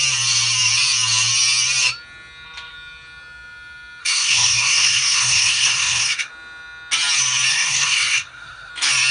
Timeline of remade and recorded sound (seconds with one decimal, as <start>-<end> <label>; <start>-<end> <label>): 0.0-4.0 recorded; 4.0-6.3 remade; 6.3-7.5 recorded; 7.5-8.7 remade; 8.7-9.1 recorded